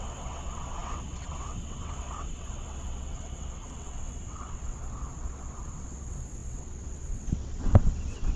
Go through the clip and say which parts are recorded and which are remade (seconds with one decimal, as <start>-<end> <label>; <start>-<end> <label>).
0.0-8.4 remade